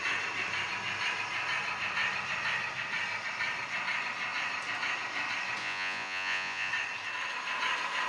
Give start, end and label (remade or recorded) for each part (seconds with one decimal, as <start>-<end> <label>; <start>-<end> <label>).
0.0-5.6 recorded; 5.6-6.7 remade; 6.7-8.1 recorded